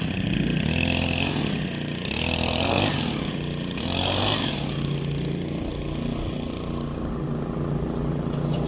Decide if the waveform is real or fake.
real